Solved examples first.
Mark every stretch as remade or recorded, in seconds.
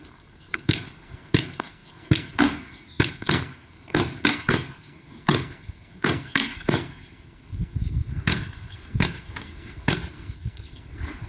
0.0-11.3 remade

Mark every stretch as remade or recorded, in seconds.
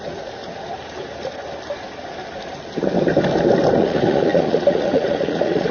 0.0-0.4 remade; 0.4-3.8 recorded; 3.8-5.7 remade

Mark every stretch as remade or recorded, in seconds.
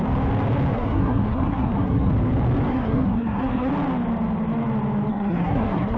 0.0-0.7 recorded; 0.7-2.1 remade; 2.1-2.7 recorded; 2.7-3.7 remade; 3.7-5.1 recorded; 5.1-6.0 remade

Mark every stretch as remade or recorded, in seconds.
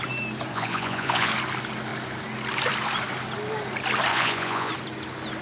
0.0-0.5 recorded; 0.5-1.3 remade; 1.3-4.1 recorded; 4.1-4.7 remade; 4.7-5.4 recorded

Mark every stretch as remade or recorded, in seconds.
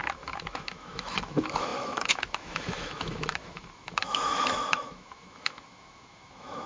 0.0-6.7 remade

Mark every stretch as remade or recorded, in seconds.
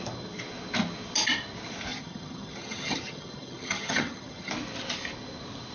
0.0-1.9 recorded; 1.9-4.5 remade; 4.5-5.7 recorded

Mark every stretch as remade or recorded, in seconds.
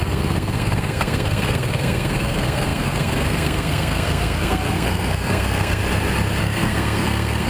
0.0-5.8 remade; 5.8-6.4 recorded; 6.4-7.5 remade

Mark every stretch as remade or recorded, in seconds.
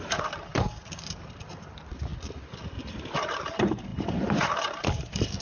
0.0-2.1 remade; 2.1-2.9 recorded; 2.9-5.4 remade